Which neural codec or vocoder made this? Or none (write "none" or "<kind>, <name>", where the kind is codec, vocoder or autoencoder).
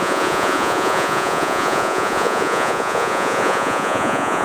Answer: vocoder, Vocos